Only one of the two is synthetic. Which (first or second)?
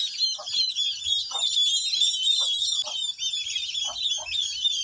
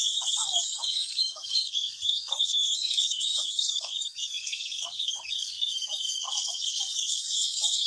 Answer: second